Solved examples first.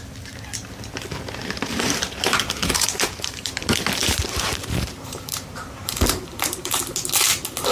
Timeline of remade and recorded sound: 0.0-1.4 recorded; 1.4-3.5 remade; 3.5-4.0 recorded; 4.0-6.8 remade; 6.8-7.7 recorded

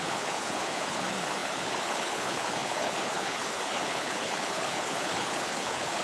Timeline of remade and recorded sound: 0.0-6.0 remade

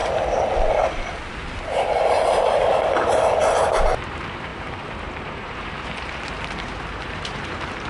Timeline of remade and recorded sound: 0.0-1.6 recorded; 1.6-7.9 remade

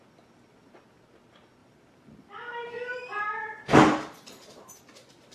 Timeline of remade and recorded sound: 0.0-1.6 recorded; 1.6-4.8 remade; 4.8-5.3 recorded

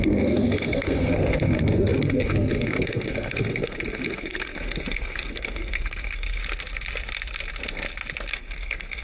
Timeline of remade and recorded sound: 0.0-6.4 remade; 6.4-8.3 recorded; 8.3-9.0 remade

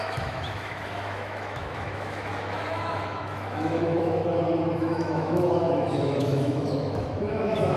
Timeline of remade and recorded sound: 0.0-4.2 remade; 4.2-4.8 recorded; 4.8-7.8 remade